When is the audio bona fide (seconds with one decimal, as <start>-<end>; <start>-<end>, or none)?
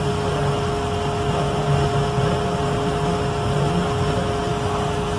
0.0-5.2